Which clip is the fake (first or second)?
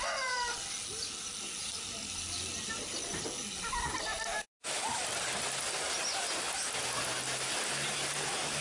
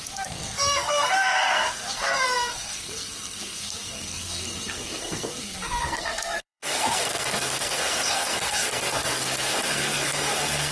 second